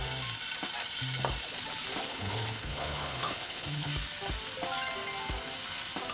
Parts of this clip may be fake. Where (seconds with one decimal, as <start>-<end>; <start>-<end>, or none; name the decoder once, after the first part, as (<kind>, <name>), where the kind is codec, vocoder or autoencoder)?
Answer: 2.1-3.9 (codec, HILCodec)